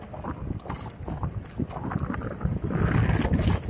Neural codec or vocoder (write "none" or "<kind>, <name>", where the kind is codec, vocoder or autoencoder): none